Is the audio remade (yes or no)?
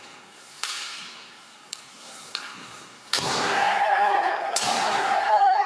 yes